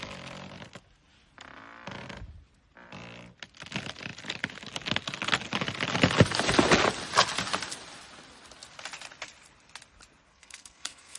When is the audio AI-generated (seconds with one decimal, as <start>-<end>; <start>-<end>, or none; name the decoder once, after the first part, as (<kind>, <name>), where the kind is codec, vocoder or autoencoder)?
10.3-11.2 (codec, SNAC)

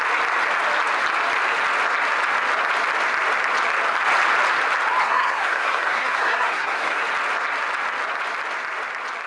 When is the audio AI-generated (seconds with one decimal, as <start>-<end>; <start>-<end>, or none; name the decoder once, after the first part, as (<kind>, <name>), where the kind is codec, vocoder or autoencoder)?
5.0-7.0 (codec, SNAC)

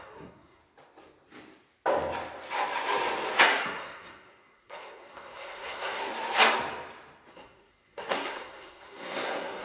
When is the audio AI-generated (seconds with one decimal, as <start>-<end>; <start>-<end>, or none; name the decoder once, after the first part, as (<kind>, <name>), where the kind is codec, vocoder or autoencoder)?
0.0-0.6 (codec, SNAC); 3.4-6.1; 7.3-9.6

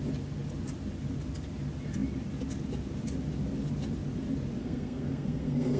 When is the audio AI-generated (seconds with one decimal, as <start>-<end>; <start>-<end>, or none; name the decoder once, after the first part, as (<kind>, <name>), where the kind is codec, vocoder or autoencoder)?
4.6-5.8 (codec, SNAC)

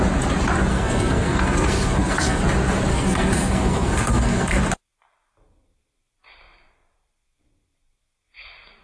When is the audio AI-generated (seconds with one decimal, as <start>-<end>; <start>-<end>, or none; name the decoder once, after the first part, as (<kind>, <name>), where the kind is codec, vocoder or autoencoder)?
0.7-2.4 (codec, SNAC); 2.9-4.6

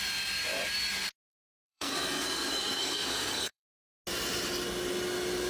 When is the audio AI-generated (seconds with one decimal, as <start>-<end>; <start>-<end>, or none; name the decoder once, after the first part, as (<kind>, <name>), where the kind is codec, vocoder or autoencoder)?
1.3-3.7 (codec, SNAC)